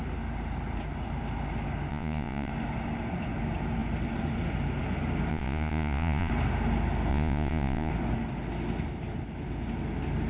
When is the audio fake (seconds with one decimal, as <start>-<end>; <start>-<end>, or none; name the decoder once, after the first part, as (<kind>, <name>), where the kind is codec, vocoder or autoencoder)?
1.9-2.5 (vocoder, Vocos); 5.3-6.3; 7.1-7.9